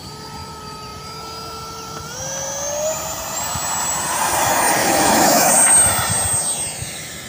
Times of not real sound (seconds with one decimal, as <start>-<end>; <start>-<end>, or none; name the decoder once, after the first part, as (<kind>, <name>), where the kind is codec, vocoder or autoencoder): 4.8-5.5 (autoencoder, DAC-VAE)